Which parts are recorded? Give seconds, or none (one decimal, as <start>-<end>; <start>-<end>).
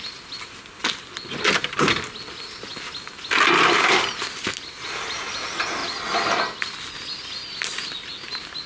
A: 0.0-8.7